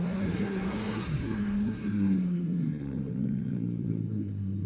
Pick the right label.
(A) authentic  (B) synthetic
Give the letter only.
B